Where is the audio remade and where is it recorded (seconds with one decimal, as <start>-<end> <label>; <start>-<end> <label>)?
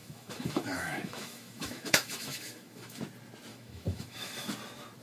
0.0-3.0 remade; 3.0-3.5 recorded; 3.5-4.5 remade; 4.5-5.0 recorded